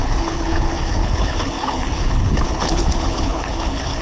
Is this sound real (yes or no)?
no